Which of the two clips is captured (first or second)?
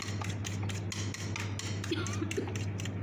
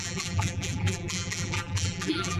first